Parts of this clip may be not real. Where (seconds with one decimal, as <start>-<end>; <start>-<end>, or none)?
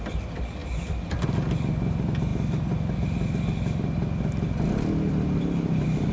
none